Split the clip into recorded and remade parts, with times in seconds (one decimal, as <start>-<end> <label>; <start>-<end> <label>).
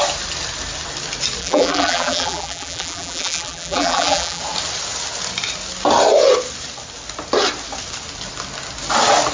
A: 0.0-1.4 recorded; 1.4-4.4 remade; 4.4-9.3 recorded